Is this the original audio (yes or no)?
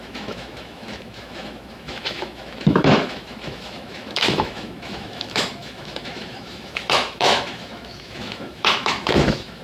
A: no